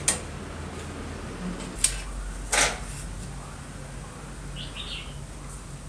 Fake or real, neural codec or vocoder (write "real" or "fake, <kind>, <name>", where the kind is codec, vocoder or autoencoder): real